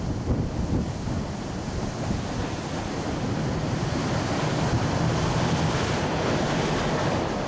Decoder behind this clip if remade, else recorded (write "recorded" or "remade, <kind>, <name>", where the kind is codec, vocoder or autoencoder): recorded